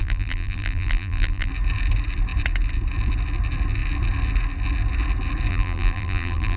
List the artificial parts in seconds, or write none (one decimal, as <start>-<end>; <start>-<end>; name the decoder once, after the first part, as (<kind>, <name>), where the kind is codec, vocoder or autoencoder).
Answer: 0.0-1.5 (vocoder, BigVGAN v2); 5.5-6.6